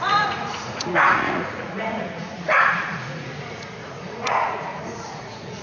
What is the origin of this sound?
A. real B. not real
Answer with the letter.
B